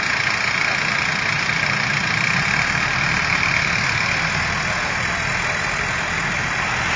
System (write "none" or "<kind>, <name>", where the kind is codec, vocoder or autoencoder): none